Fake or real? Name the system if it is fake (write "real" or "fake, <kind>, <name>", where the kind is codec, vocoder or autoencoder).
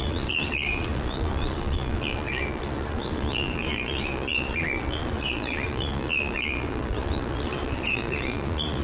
fake, vocoder, Vocos